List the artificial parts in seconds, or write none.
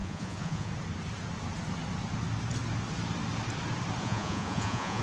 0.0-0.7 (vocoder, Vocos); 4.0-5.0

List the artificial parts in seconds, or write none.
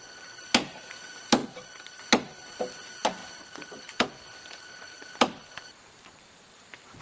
1.4-2.0 (vocoder, BigVGAN v2); 6.5-7.0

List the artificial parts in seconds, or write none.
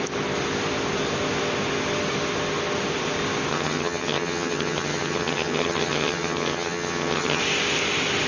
3.5-7.4 (vocoder, HiFi-GAN)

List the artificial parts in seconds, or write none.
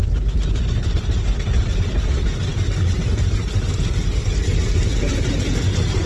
none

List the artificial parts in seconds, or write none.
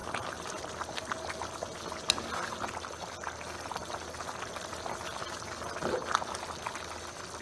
none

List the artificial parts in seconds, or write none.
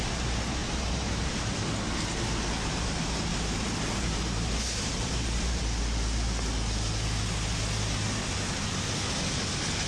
0.6-1.7 (vocoder, BigVGAN v2); 2.4-2.9; 3.3-5.8